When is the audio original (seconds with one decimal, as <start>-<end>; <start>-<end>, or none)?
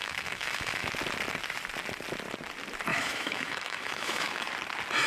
0.9-2.9; 4.5-5.1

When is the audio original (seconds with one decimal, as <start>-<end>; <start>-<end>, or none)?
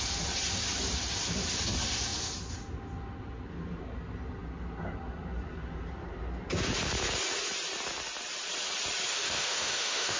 0.0-9.1